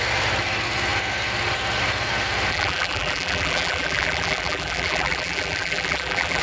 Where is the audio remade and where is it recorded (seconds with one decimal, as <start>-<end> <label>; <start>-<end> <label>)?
0.0-2.5 recorded; 2.5-6.4 remade